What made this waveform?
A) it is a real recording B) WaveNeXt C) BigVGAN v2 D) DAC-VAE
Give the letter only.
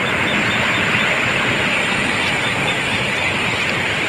A